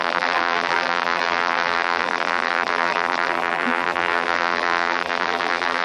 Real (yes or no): no